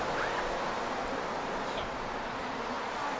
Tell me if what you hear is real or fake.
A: real